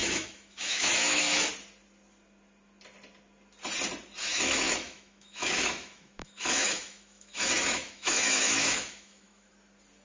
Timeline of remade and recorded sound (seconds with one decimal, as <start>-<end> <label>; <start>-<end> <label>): 0.0-1.5 remade; 1.5-4.2 recorded; 4.2-9.5 remade; 9.5-10.0 recorded